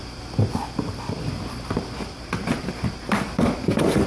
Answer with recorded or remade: recorded